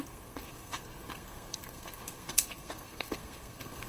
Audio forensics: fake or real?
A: fake